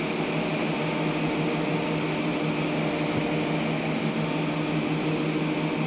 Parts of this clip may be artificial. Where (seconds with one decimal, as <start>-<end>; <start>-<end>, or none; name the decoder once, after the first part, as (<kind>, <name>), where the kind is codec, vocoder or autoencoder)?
none